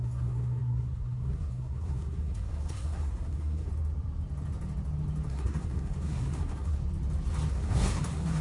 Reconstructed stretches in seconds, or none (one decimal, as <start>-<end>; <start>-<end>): 0.0-3.7; 5.3-6.8; 7.5-8.4